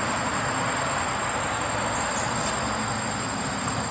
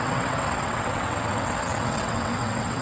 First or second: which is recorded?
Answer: first